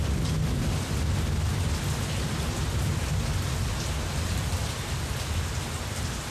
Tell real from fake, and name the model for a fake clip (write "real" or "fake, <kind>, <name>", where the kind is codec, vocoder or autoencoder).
real